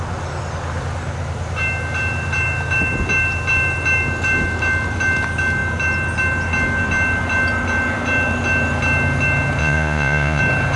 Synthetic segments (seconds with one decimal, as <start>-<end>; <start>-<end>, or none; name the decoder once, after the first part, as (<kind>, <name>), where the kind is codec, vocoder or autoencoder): 9.6-10.4 (vocoder, Vocos)